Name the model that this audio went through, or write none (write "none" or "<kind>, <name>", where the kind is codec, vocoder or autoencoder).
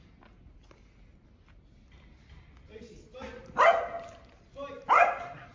none